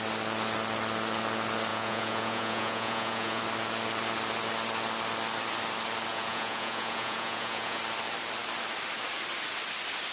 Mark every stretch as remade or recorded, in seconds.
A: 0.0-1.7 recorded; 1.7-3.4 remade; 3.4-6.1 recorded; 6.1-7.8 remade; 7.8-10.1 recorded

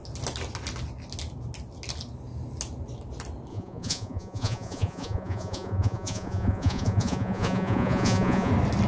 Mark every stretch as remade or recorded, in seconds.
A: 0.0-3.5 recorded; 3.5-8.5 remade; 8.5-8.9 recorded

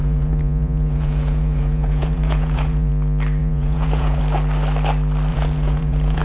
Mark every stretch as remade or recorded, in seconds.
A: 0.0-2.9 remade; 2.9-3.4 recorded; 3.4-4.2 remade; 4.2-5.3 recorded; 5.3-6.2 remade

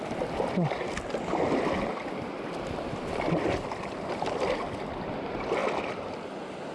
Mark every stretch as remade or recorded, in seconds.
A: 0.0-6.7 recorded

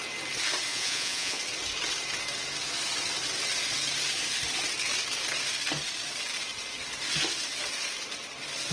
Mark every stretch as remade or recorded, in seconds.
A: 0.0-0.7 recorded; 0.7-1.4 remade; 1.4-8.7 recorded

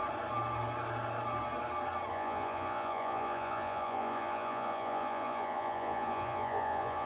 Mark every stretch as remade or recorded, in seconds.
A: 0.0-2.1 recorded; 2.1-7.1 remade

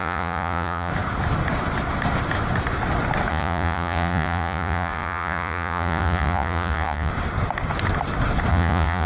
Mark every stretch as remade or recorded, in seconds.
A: 0.0-0.9 remade; 0.9-3.3 recorded; 3.3-7.1 remade; 7.1-8.5 recorded; 8.5-9.1 remade

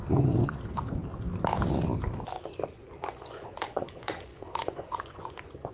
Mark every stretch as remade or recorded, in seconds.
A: 0.0-1.0 remade; 1.0-2.7 recorded; 2.7-5.7 remade